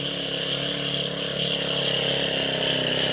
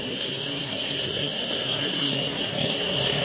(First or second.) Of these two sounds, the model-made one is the second